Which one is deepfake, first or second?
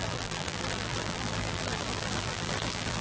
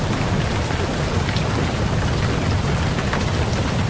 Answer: first